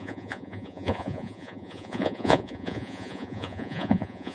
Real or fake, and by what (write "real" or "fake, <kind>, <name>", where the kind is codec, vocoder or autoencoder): fake, vocoder, Vocos